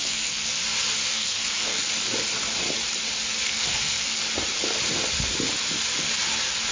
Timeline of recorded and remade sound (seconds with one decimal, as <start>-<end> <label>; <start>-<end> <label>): 0.0-0.5 remade; 0.5-1.1 recorded; 1.1-1.9 remade; 1.9-3.5 recorded; 3.5-4.2 remade; 4.2-6.7 recorded